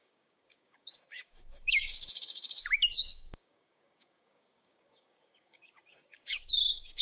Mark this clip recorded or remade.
remade